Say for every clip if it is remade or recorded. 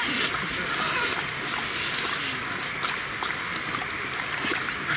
recorded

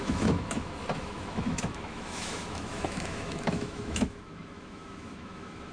remade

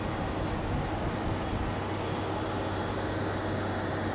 recorded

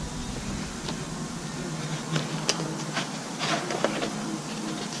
recorded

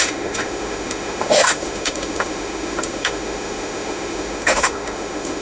remade